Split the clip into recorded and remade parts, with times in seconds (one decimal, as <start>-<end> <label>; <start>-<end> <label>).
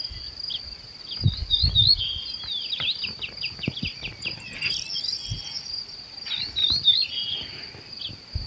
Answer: 0.0-8.5 recorded